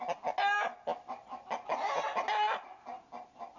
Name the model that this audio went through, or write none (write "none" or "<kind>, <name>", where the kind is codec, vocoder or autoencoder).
none